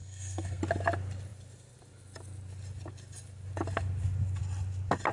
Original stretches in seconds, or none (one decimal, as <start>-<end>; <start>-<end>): 0.6-5.1